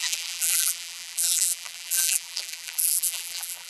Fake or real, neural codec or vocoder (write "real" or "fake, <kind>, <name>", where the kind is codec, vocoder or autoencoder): fake, vocoder, BigVGAN v2